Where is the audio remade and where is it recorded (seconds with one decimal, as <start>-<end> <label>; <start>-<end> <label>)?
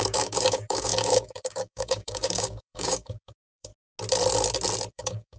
0.0-3.7 remade; 3.7-4.9 recorded; 4.9-5.4 remade